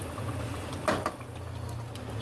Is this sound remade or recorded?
recorded